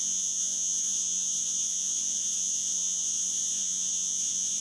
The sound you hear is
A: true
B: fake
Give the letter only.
B